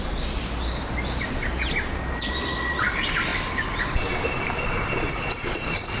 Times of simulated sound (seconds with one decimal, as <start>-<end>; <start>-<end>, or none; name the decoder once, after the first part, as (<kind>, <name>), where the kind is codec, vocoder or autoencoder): 0.0-0.4 (vocoder, Vocos); 2.2-3.3; 4.6-6.0